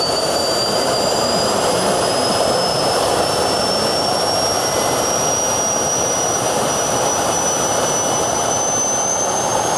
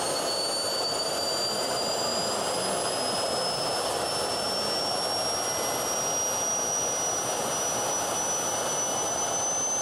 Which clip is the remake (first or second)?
first